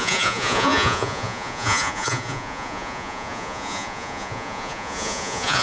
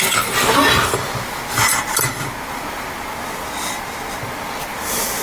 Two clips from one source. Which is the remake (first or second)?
first